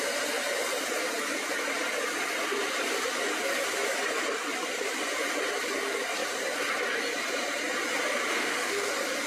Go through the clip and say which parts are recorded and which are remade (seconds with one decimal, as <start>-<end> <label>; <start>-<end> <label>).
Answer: 0.0-8.3 recorded; 8.3-8.9 remade; 8.9-9.3 recorded